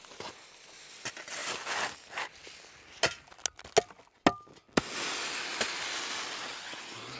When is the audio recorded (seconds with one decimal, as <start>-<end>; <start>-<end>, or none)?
0.0-7.2